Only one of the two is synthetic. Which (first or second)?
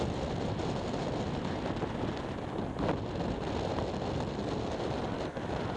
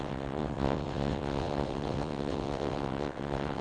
second